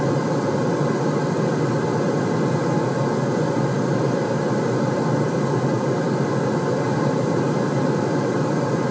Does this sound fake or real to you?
real